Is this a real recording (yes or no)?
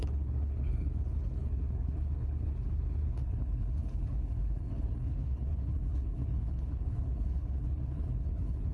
no